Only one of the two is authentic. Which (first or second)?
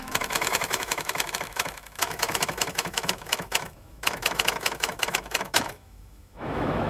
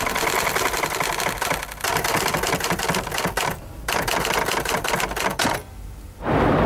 second